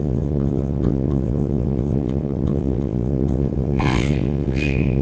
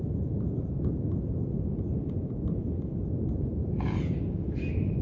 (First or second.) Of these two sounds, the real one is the second